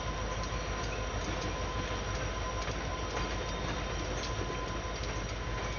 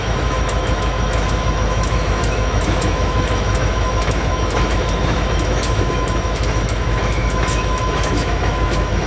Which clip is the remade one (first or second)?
second